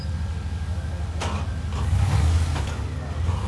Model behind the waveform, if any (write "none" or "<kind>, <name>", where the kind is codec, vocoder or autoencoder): codec, DAC